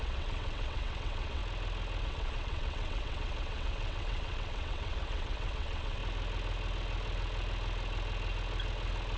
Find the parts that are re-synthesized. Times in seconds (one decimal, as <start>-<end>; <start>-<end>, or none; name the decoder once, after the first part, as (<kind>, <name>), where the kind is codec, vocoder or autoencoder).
0.0-1.4 (vocoder, WaveNeXt); 2.0-6.0